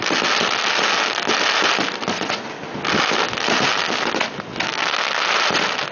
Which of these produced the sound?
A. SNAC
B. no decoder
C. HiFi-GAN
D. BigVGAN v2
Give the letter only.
B